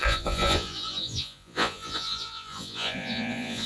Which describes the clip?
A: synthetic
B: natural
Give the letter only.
A